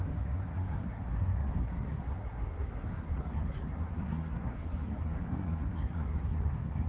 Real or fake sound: fake